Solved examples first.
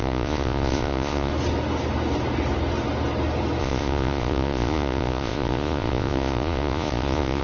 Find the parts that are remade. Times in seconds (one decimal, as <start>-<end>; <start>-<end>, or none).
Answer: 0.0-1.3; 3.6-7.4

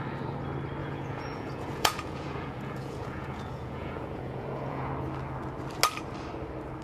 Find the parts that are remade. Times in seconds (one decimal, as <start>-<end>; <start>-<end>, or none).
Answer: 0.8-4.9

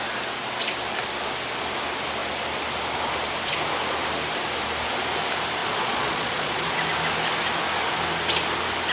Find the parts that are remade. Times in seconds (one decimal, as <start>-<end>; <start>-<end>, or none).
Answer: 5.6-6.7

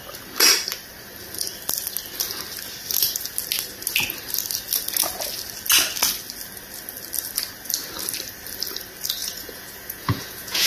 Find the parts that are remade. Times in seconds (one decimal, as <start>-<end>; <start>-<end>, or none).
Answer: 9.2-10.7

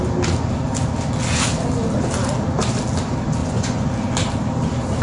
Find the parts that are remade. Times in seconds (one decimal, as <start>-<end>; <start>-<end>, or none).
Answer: 3.4-3.9